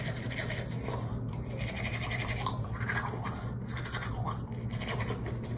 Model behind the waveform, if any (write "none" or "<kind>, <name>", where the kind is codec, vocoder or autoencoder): none